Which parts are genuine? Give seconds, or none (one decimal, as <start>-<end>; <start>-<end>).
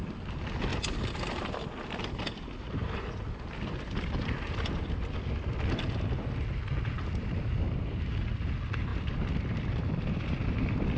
0.0-11.0